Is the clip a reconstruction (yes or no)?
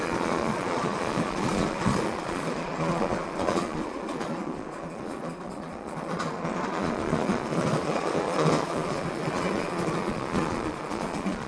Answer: yes